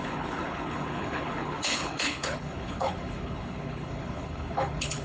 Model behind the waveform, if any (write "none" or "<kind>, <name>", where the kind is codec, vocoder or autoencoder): codec, HILCodec